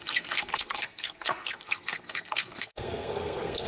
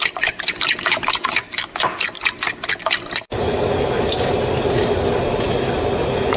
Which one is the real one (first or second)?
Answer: second